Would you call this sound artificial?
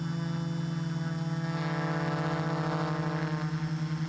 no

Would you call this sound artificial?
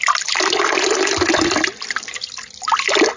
no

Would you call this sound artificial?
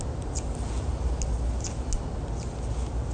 no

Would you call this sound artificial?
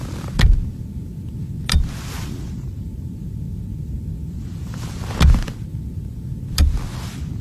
no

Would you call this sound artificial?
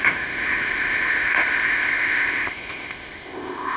yes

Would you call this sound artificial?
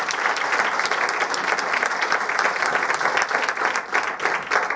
no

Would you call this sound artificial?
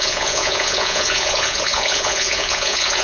yes